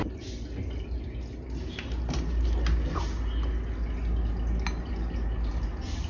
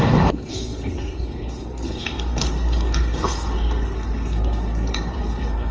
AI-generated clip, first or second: second